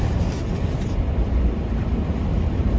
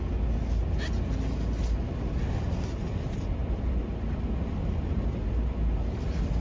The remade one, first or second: first